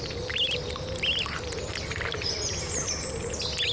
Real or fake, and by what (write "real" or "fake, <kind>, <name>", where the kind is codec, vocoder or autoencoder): real